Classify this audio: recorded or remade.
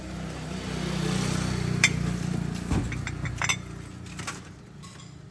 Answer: recorded